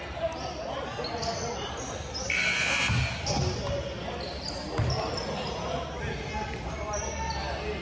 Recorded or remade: recorded